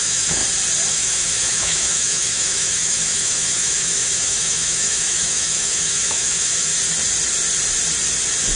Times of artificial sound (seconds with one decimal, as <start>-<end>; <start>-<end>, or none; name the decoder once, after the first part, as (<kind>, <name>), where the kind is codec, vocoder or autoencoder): 0.0-0.4 (autoencoder, DAC-VAE); 0.9-6.7